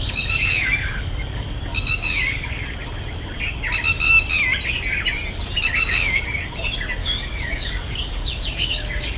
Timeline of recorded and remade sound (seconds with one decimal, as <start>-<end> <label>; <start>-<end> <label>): 0.0-2.6 remade; 2.6-5.7 recorded; 5.7-6.2 remade; 6.2-7.0 recorded; 7.0-9.2 remade